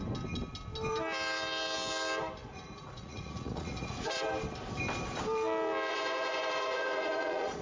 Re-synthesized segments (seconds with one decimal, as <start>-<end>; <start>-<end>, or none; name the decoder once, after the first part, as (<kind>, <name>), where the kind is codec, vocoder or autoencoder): 2.4-4.2 (vocoder, Vocos); 5.9-7.6